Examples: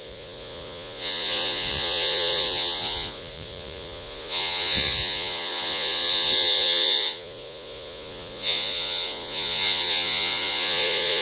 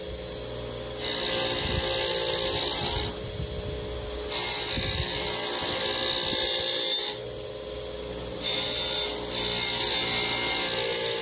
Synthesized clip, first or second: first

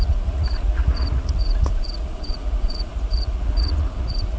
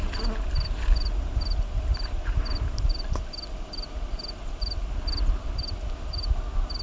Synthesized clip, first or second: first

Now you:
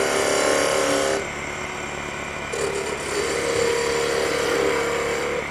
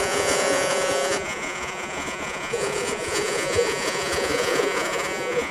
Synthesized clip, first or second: second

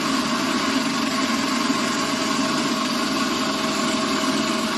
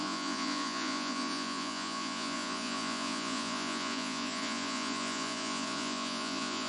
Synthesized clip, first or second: second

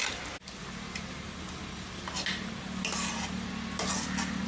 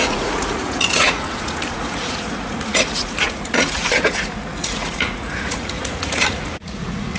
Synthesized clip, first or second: second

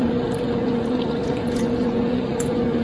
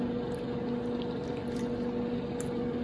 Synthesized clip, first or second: first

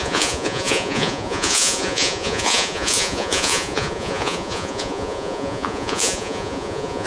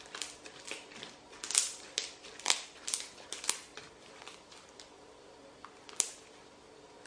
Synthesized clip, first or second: first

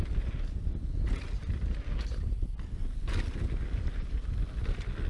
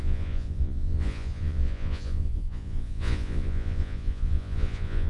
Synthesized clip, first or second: second